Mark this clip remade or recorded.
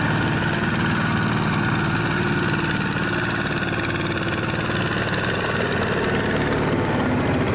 recorded